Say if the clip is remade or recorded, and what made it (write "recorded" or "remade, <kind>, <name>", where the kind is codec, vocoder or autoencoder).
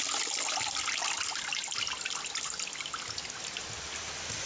recorded